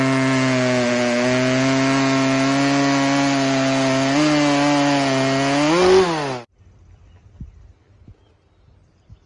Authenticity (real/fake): real